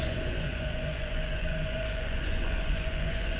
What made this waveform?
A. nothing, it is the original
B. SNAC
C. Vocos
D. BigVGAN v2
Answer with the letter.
C